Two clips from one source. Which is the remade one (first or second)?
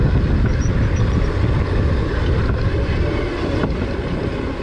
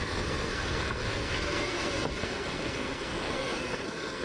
second